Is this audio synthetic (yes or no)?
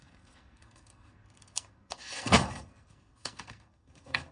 yes